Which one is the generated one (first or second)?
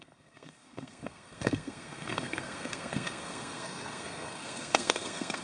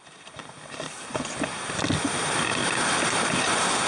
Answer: first